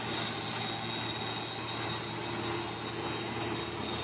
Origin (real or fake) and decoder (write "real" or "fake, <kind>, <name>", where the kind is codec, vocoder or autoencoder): real